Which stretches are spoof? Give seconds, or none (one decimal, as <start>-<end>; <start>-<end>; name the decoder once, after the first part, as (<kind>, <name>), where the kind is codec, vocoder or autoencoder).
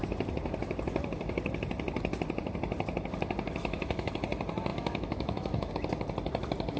3.6-4.1 (autoencoder, DAC-VAE); 4.7-5.7